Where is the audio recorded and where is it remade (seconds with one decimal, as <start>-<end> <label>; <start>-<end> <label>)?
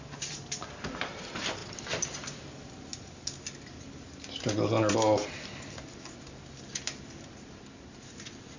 0.0-1.6 remade; 1.6-2.1 recorded; 2.1-2.9 remade; 2.9-7.9 recorded; 7.9-8.6 remade